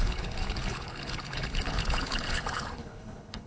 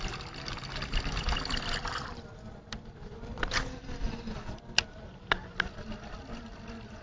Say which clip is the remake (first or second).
first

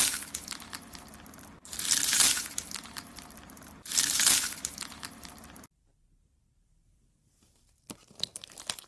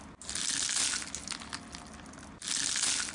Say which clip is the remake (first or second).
first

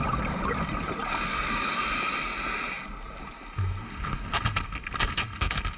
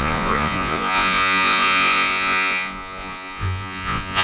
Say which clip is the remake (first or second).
second